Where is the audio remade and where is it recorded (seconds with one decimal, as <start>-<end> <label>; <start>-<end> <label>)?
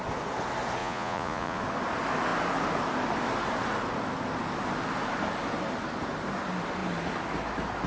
0.0-0.8 recorded; 0.8-1.6 remade; 1.6-7.9 recorded